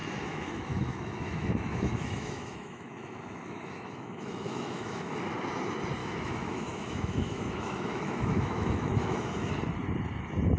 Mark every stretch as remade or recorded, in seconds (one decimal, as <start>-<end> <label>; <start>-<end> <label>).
0.0-5.1 remade; 5.1-6.0 recorded; 6.0-9.5 remade; 9.5-10.6 recorded